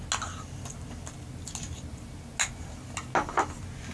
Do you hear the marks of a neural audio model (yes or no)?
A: no